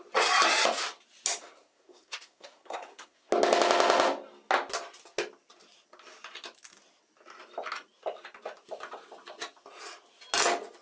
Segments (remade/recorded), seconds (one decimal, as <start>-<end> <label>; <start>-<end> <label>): 0.0-1.4 recorded; 1.4-3.3 remade; 3.3-10.8 recorded